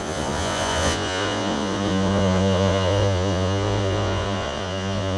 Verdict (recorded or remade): remade